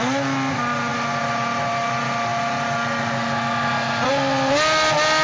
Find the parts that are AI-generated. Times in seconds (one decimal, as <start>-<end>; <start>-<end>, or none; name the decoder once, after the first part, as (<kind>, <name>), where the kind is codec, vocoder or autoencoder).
none